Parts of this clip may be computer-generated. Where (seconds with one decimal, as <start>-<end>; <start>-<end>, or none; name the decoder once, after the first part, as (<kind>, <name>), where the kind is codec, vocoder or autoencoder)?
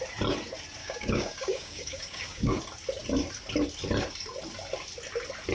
0.8-2.6 (codec, DAC)